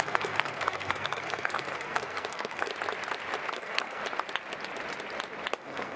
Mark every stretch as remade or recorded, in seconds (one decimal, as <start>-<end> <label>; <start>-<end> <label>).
0.0-2.7 remade; 2.7-3.5 recorded; 3.5-4.0 remade; 4.0-5.6 recorded; 5.6-6.0 remade